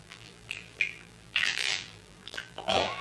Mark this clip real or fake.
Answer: fake